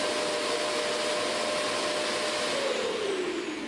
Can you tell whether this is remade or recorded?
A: recorded